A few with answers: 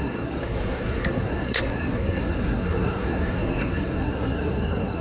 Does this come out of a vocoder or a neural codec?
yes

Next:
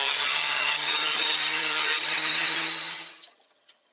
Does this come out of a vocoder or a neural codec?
yes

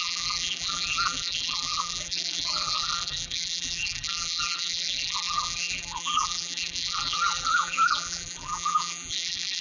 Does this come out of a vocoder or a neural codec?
yes